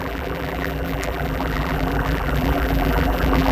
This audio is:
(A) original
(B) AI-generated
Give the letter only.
B